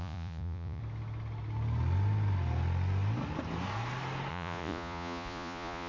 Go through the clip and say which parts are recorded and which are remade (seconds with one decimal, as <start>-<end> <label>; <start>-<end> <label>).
0.0-0.8 remade; 0.8-4.3 recorded; 4.3-5.9 remade